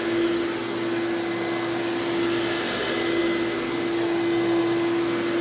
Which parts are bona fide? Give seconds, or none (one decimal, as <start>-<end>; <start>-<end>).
0.0-5.4